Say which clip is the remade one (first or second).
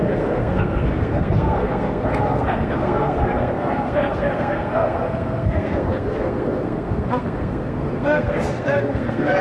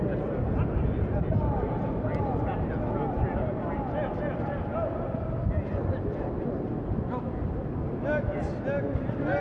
first